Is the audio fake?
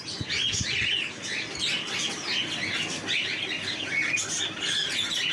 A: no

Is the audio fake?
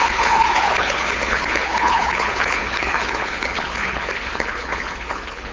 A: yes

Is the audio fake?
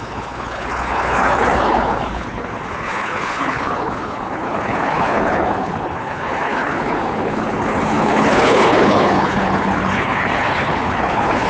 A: yes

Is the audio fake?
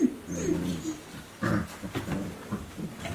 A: no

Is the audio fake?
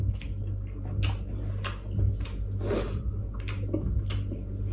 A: no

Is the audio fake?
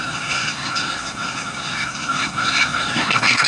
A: yes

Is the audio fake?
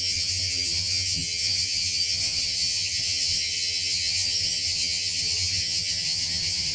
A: yes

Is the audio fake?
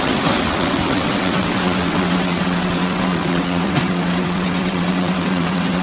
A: yes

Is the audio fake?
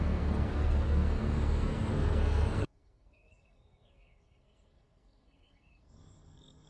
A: yes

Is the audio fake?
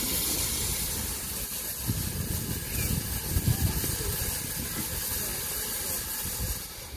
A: no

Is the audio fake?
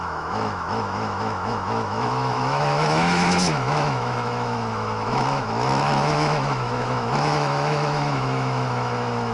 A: yes